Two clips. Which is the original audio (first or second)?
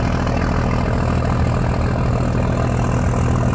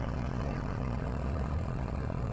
first